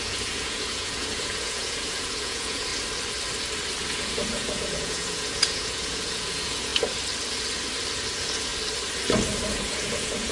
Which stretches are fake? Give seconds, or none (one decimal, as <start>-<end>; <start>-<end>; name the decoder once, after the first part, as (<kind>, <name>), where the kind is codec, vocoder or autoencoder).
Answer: 0.0-2.7 (vocoder, Vocos); 3.8-6.7; 8.1-8.5; 9.5-10.3